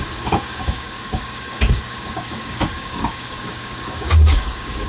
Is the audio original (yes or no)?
no